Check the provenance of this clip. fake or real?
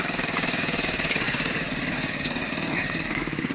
fake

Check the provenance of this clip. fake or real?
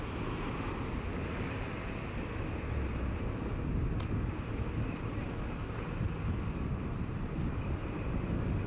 real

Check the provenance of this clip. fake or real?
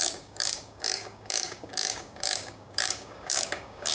fake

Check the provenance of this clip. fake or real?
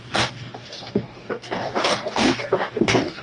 fake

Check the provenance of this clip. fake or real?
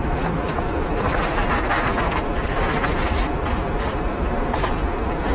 real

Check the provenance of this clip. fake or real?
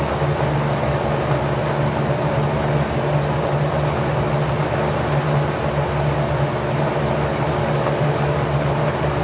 real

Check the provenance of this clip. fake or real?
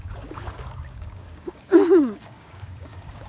fake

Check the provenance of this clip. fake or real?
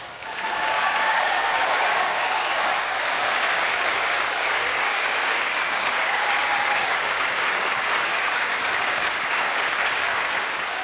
fake